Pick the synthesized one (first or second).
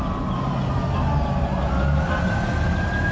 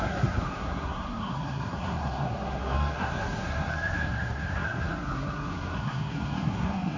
second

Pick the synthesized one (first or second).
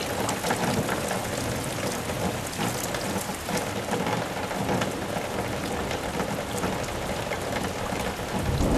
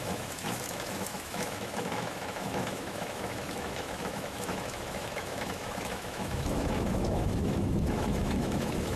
second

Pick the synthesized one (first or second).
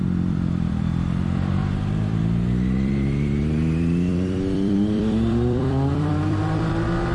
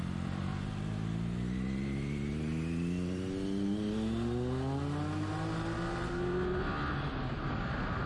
first